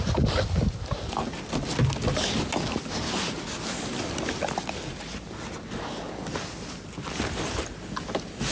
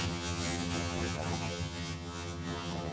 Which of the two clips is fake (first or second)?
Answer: second